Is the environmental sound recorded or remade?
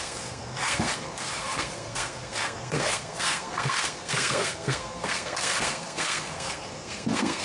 remade